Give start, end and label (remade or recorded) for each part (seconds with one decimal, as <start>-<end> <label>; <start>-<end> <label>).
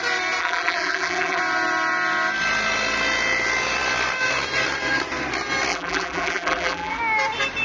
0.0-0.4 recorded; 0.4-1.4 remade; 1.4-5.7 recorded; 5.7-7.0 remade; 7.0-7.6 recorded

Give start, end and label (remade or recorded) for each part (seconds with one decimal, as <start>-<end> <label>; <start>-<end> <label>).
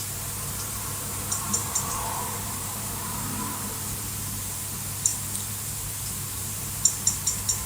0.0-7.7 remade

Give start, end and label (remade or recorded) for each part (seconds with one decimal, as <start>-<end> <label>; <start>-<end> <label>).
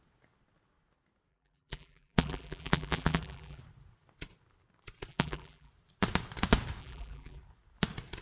0.0-1.3 recorded; 1.3-3.6 remade; 3.6-5.1 recorded; 5.1-5.7 remade; 5.7-6.8 recorded; 6.8-7.4 remade; 7.4-8.2 recorded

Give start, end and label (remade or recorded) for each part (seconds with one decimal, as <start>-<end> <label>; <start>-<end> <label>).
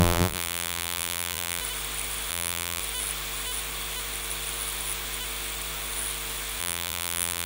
0.0-1.6 remade; 1.6-2.3 recorded; 2.3-2.8 remade; 2.8-6.6 recorded; 6.6-7.5 remade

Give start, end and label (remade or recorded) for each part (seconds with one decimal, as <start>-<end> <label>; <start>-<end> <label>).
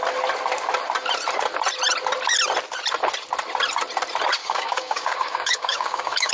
0.0-4.4 recorded; 4.4-6.3 remade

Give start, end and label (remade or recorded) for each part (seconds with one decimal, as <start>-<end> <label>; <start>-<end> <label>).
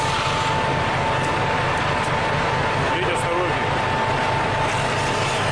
0.0-5.5 recorded